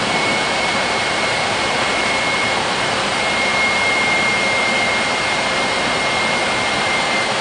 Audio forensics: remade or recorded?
remade